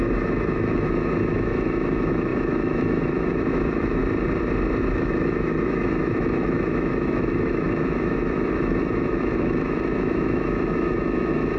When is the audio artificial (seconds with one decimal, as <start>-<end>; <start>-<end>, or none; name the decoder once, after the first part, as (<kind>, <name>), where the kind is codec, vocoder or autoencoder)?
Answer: 0.0-4.0 (autoencoder, DAC-VAE); 4.8-11.6